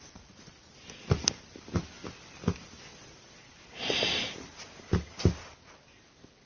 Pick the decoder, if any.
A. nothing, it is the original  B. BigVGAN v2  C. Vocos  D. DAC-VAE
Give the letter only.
A